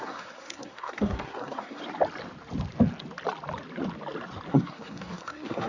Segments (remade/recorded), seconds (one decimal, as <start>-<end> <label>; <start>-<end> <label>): 0.0-1.8 remade; 1.8-4.5 recorded; 4.5-5.7 remade